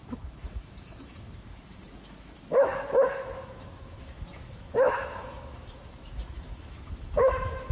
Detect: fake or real fake